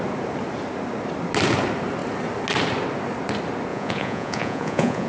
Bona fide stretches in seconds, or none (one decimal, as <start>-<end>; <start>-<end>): 0.0-3.7